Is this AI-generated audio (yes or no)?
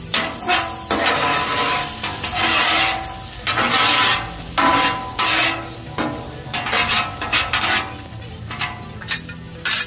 no